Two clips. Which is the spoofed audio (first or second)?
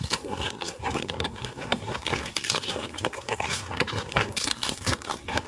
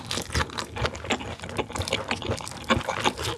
first